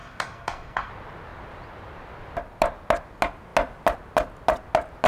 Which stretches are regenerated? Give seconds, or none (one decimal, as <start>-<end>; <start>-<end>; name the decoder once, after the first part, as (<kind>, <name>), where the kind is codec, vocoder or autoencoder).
0.0-0.9 (codec, SNAC)